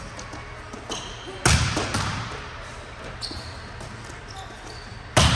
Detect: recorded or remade recorded